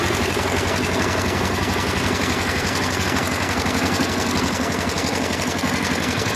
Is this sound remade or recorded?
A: remade